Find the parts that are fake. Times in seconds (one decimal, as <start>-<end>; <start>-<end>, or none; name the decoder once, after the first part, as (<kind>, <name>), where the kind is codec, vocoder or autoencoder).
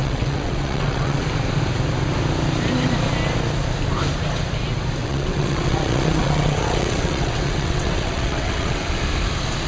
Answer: 0.0-1.2 (vocoder, WaveNeXt); 5.0-8.9